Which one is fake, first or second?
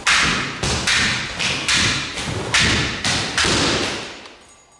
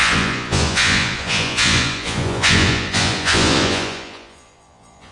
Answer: second